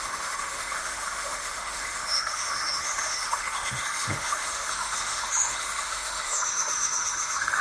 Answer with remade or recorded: remade